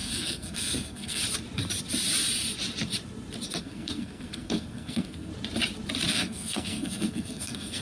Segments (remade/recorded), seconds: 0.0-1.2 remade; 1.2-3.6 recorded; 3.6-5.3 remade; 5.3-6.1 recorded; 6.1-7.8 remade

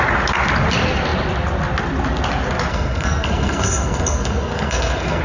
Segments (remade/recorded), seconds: 0.0-2.7 recorded; 2.7-5.2 remade

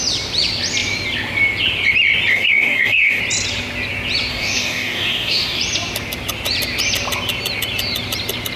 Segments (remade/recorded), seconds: 0.0-2.3 recorded; 2.3-3.2 remade; 3.2-4.3 recorded; 4.3-5.6 remade; 5.6-8.6 recorded

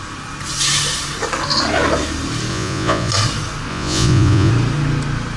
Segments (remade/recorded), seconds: 0.0-2.5 recorded; 2.5-3.1 remade; 3.1-3.7 recorded; 3.7-4.5 remade; 4.5-5.4 recorded

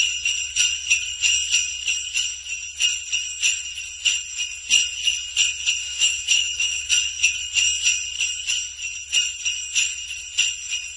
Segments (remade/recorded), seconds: 0.0-5.8 recorded; 5.8-6.9 remade; 6.9-11.0 recorded

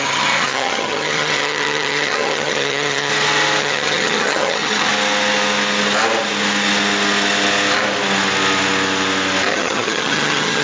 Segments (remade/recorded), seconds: 0.0-3.1 remade; 3.1-3.6 recorded; 3.6-4.9 remade; 4.9-9.5 recorded; 9.5-10.6 remade

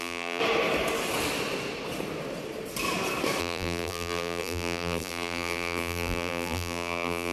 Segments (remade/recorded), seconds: 0.0-0.4 remade; 0.4-3.4 recorded; 3.4-7.3 remade

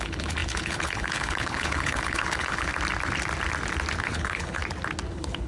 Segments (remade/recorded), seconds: 0.0-2.7 remade; 2.7-4.0 recorded; 4.0-4.6 remade; 4.6-5.1 recorded; 5.1-5.5 remade